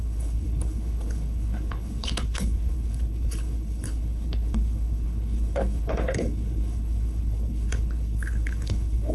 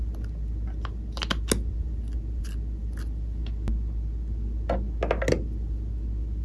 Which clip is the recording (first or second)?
second